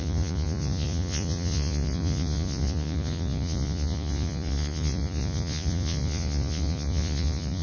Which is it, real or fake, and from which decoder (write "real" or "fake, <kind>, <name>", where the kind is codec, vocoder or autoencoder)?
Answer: fake, vocoder, Vocos